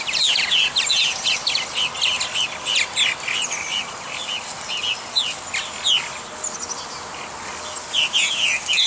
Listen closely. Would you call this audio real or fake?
real